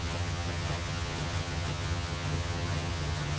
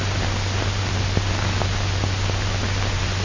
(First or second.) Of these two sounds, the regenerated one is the first